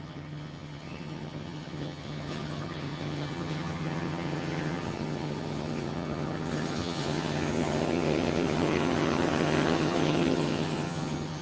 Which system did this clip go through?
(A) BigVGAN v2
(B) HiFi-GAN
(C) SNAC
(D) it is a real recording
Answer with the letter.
B